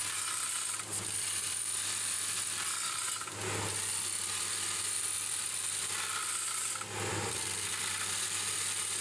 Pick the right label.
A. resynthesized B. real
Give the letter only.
A